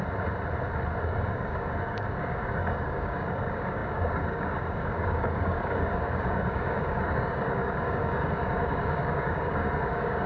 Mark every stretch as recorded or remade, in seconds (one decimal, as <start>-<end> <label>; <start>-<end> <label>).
0.0-1.0 recorded; 1.0-10.3 remade